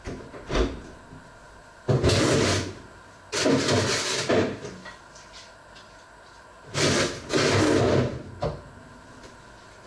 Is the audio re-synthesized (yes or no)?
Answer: no